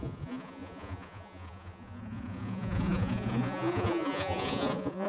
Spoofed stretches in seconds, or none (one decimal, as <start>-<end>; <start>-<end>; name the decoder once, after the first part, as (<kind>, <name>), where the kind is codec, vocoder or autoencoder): 0.0-5.1 (vocoder, Vocos)